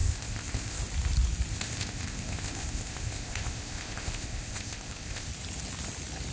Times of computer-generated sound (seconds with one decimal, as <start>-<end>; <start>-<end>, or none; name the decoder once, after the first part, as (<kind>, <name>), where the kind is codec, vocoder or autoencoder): 0.0-0.8 (codec, ZipCodec); 1.5-5.3